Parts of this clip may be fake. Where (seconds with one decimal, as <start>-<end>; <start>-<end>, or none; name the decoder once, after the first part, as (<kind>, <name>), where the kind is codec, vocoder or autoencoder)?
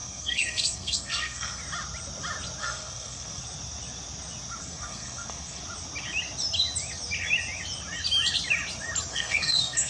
0.0-1.6 (codec, SNAC); 2.6-3.4; 4.6-5.6; 9.1-9.9